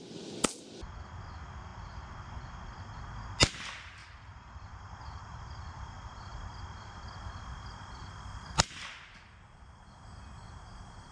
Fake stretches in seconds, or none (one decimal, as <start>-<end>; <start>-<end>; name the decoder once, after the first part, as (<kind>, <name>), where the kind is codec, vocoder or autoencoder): 4.0-5.0 (vocoder, BigVGAN v2); 6.3-8.7